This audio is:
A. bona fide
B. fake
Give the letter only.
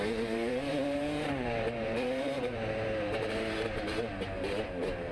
B